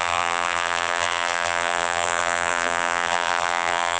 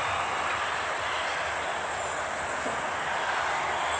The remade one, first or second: first